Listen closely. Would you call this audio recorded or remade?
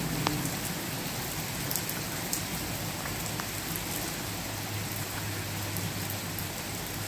recorded